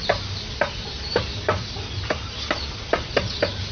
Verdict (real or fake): real